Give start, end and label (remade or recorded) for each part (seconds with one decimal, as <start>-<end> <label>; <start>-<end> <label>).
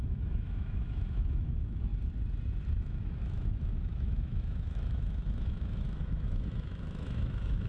0.0-1.9 remade; 1.9-2.8 recorded; 2.8-7.7 remade